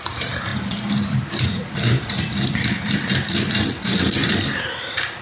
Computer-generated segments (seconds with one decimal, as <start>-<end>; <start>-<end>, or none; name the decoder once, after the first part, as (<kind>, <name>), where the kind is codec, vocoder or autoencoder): 0.0-0.5 (vocoder, BigVGAN v2); 1.1-5.2